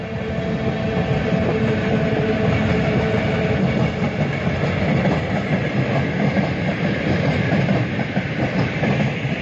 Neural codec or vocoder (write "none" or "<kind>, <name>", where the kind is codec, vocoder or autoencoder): none